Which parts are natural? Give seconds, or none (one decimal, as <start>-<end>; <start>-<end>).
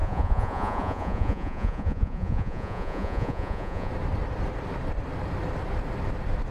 3.9-6.5